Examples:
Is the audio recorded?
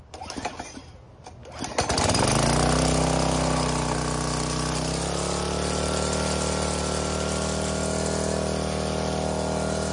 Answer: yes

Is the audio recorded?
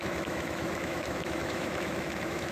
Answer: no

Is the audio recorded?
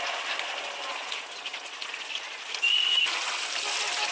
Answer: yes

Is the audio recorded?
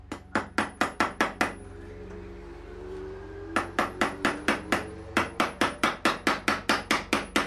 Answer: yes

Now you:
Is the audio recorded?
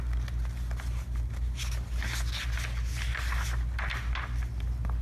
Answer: yes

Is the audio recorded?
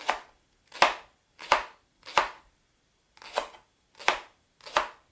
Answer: yes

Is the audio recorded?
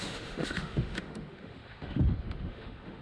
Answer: no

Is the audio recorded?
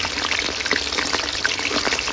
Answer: yes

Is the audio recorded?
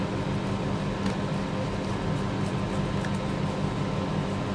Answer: yes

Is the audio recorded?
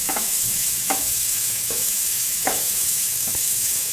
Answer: no